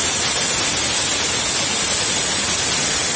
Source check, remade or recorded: recorded